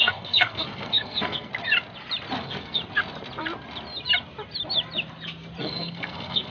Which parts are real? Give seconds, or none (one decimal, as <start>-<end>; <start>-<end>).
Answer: 1.5-2.4; 2.8-5.6